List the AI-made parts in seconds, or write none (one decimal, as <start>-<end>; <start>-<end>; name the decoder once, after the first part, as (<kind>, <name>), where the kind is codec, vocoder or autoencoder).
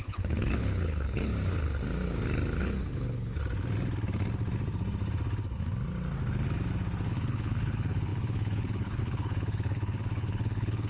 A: 0.0-1.3 (codec, HILCodec); 2.6-3.4; 7.1-10.9